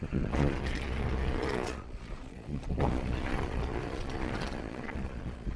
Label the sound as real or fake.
fake